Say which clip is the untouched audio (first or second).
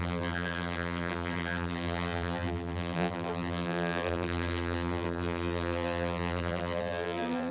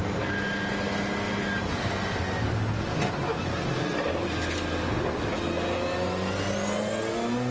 second